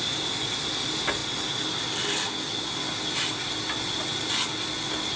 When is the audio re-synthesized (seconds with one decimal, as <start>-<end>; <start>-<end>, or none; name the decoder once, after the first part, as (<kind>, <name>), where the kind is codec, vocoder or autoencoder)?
none